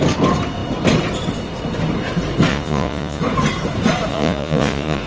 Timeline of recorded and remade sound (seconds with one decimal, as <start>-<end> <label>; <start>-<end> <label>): 0.0-2.5 recorded; 2.5-3.2 remade; 3.2-4.1 recorded; 4.1-5.1 remade